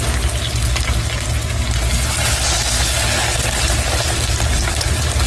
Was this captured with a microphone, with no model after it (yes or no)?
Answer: yes